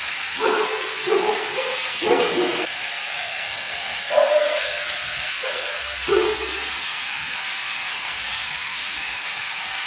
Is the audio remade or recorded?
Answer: remade